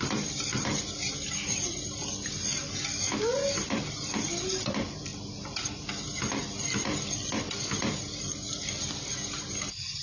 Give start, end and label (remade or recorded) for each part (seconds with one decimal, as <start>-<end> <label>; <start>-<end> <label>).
0.0-10.0 recorded